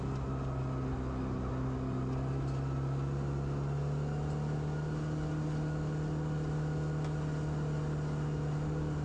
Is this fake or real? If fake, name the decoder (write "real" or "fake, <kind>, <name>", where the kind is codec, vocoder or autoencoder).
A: real